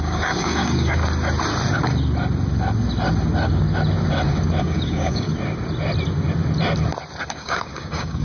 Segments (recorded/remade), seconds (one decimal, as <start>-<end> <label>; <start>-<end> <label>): 0.0-1.0 remade; 1.0-4.6 recorded; 4.6-5.3 remade; 5.3-7.3 recorded; 7.3-8.2 remade